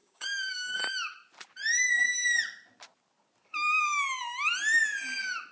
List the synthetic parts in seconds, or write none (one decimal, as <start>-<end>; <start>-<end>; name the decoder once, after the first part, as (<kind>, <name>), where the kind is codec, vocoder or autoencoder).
0.0-0.8 (codec, DAC)